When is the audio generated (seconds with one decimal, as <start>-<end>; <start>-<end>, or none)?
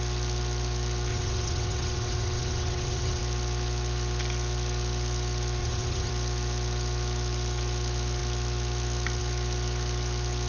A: 1.1-3.2; 5.6-6.1